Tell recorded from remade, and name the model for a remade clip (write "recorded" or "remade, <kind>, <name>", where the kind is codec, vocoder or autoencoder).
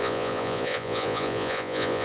remade, vocoder, Vocos